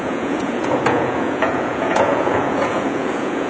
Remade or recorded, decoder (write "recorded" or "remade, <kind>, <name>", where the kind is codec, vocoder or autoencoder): remade, vocoder, Vocos